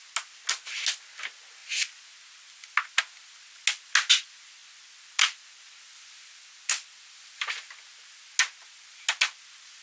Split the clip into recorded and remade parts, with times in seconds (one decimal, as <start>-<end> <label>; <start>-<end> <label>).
0.0-9.8 recorded